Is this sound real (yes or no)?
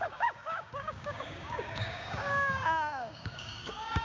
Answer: no